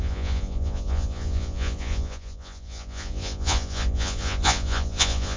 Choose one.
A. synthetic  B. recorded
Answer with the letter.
A